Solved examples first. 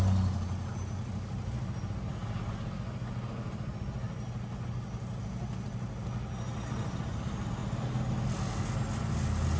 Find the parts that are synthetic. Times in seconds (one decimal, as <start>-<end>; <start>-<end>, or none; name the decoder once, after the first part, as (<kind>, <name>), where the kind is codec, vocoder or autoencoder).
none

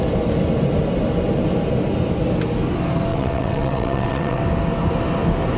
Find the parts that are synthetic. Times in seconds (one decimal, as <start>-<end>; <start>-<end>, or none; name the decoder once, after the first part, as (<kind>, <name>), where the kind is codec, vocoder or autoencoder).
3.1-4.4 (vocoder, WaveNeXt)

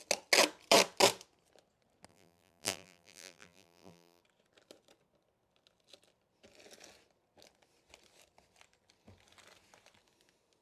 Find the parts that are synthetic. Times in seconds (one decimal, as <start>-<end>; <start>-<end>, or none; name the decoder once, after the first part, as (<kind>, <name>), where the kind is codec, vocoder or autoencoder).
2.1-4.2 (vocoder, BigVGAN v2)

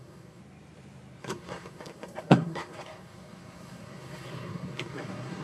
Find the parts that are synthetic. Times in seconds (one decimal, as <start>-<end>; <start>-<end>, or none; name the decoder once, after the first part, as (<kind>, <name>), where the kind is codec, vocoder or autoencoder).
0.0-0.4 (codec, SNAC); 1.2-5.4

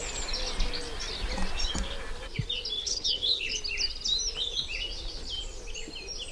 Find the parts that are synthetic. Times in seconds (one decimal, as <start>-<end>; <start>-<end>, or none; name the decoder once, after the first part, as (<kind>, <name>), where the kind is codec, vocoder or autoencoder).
2.8-3.6 (codec, HILCodec)